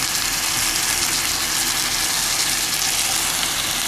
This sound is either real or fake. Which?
real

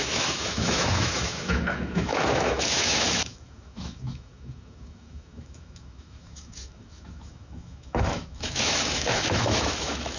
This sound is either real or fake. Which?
fake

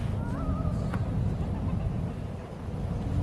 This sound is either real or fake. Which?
real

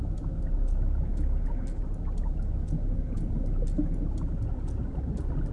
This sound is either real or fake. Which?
real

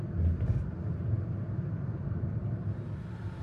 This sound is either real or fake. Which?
real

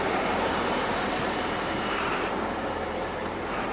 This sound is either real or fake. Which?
fake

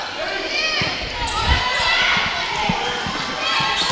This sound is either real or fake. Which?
real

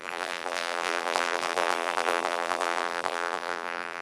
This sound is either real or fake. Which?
fake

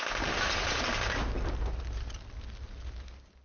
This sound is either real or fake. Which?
real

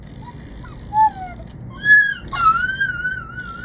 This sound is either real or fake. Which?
real